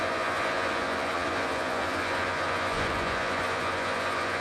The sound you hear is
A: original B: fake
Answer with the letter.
B